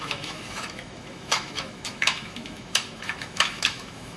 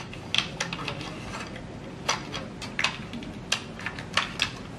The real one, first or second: second